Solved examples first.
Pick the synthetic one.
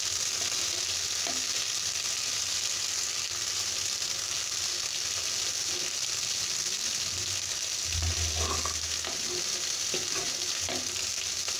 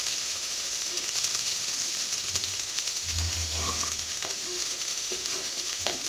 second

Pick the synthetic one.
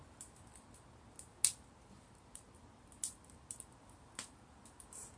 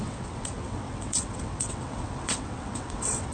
second